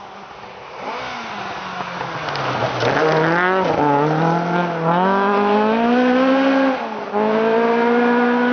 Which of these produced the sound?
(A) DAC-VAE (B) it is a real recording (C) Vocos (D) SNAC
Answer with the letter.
B